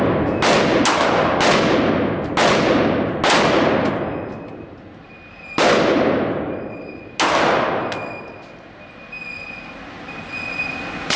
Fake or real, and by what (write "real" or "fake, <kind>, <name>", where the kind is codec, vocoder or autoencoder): real